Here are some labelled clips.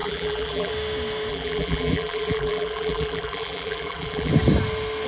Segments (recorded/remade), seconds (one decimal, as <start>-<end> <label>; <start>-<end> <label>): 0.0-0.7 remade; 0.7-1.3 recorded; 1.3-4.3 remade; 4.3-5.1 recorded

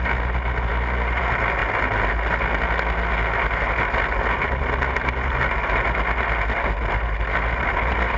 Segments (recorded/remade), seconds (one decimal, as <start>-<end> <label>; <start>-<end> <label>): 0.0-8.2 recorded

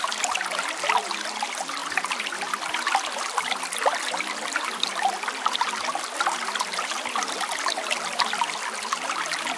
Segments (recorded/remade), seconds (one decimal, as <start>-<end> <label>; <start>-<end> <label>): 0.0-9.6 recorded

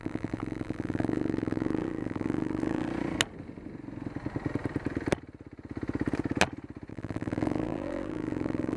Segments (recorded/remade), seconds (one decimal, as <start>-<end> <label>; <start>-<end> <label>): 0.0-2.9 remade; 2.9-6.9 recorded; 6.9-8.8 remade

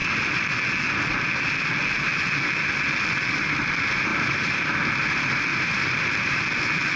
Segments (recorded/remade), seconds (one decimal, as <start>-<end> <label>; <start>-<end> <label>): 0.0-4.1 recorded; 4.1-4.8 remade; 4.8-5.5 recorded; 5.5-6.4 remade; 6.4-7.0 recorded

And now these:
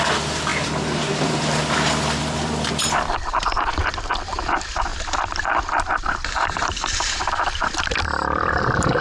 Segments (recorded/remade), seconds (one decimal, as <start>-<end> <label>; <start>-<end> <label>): 0.0-4.9 remade; 4.9-5.6 recorded; 5.6-9.0 remade

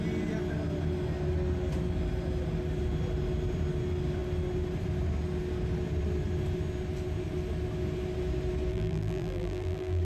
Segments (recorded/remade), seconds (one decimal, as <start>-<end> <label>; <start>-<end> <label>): 0.0-8.7 recorded; 8.7-10.0 remade

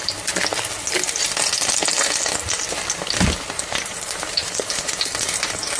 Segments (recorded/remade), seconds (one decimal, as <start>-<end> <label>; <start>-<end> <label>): 0.0-3.5 recorded; 3.5-5.8 remade